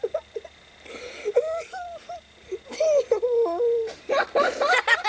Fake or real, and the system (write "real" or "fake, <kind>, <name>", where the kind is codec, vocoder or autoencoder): real